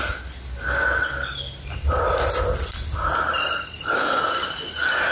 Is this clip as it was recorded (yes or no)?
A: yes